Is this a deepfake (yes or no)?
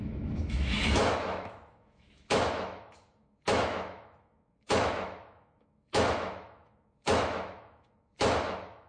yes